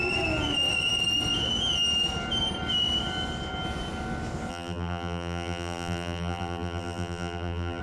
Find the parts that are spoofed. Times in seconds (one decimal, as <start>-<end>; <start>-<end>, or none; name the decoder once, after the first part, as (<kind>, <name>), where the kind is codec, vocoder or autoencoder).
4.5-7.8 (vocoder, BigVGAN v2)